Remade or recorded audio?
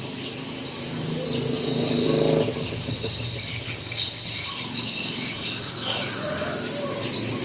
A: recorded